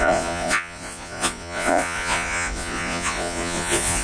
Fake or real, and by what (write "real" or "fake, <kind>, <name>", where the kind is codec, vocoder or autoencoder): fake, vocoder, Vocos